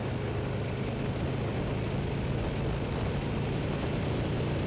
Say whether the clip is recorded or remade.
recorded